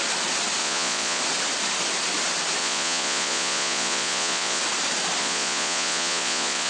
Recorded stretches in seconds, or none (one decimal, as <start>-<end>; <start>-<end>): 0.0-0.6; 1.2-2.6; 4.6-5.2